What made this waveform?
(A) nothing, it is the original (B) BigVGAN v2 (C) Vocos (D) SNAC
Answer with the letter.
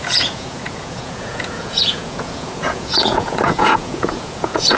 C